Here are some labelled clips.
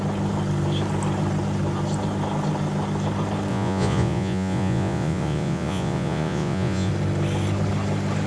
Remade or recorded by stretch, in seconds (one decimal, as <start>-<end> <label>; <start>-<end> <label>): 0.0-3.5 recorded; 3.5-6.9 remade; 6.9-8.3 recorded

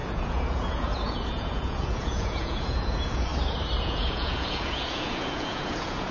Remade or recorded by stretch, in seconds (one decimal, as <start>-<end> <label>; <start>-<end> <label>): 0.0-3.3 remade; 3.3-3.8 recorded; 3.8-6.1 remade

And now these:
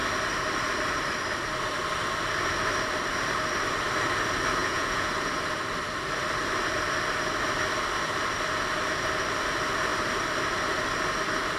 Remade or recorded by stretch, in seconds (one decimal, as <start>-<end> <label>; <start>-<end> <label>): 0.0-4.6 recorded; 4.6-5.1 remade; 5.1-11.6 recorded